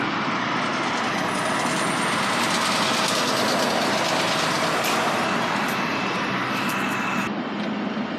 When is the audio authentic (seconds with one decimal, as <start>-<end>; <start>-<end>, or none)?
0.0-8.2